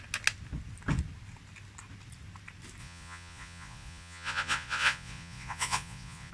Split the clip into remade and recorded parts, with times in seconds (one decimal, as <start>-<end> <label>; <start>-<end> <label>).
0.0-2.8 recorded; 2.8-6.3 remade